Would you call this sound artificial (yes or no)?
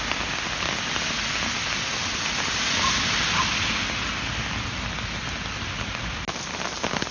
no